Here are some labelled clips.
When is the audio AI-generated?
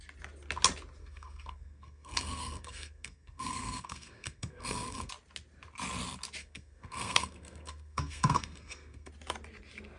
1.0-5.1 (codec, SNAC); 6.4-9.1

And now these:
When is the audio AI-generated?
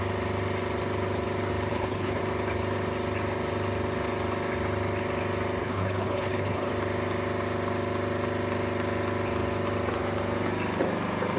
1.7-2.2 (codec, HILCodec); 5.6-6.7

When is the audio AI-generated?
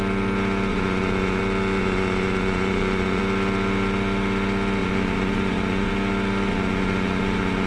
0.7-1.4 (vocoder, Vocos); 1.8-3.2; 4.8-5.9; 6.5-7.7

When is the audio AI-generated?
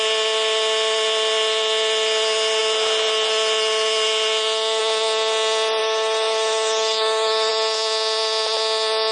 5.8-7.5 (autoencoder, DAC-VAE)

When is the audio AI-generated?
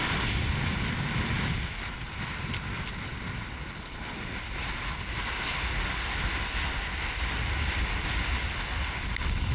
none